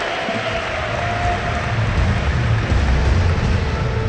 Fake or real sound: real